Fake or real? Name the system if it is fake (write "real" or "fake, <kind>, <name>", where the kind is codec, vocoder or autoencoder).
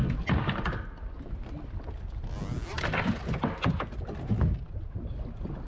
real